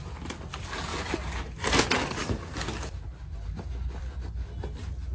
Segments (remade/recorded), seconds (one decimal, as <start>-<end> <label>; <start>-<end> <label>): 0.0-5.1 recorded